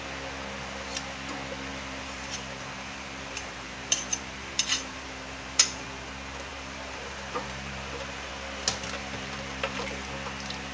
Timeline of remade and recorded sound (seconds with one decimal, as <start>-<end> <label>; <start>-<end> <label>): 0.0-1.7 recorded; 1.7-6.1 remade; 6.1-6.5 recorded; 6.5-8.3 remade; 8.3-9.0 recorded; 9.0-10.0 remade; 10.0-10.7 recorded